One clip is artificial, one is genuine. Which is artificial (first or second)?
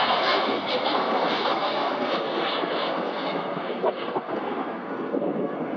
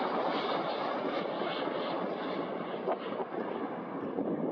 first